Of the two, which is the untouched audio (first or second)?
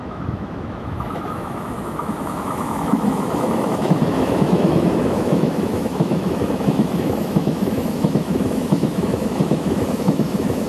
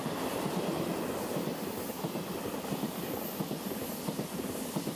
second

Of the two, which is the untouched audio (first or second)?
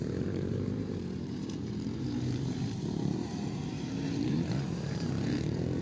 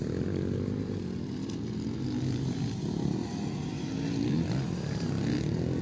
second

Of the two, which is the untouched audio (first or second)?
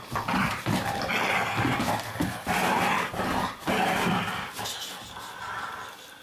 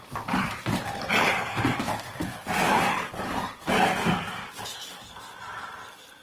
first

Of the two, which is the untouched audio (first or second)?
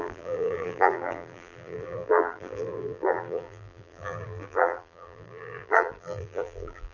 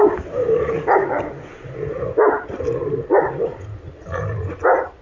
second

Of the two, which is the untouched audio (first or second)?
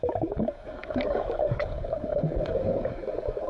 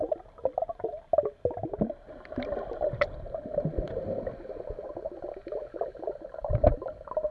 second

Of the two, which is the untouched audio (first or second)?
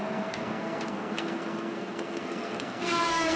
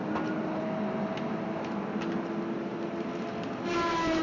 second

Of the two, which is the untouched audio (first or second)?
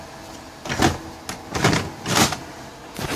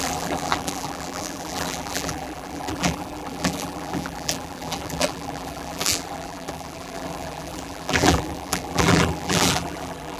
first